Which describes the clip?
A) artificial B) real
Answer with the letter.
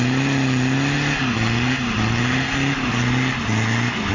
B